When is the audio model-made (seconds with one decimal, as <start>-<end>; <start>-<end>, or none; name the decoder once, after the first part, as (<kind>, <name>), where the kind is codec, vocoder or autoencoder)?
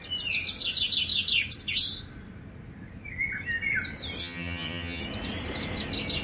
4.2-5.0 (vocoder, HiFi-GAN)